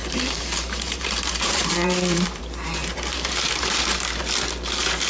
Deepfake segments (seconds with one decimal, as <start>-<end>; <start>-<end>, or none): 0.0-2.4; 2.8-4.2

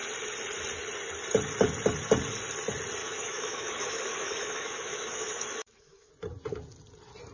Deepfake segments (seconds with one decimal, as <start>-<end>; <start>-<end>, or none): 3.0-6.1

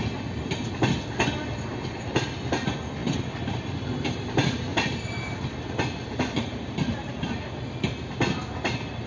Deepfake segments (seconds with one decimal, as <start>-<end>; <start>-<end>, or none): 1.7-2.5; 3.0-7.5

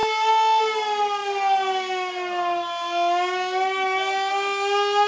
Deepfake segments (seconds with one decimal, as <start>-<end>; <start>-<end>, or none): none

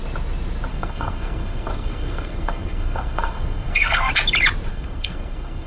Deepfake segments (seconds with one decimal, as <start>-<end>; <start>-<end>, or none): 0.7-4.1; 4.7-5.7

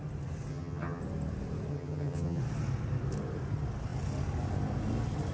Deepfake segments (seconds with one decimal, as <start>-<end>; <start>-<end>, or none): 0.5-1.0; 1.7-2.4